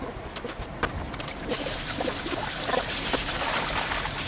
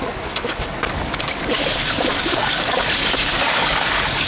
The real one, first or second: first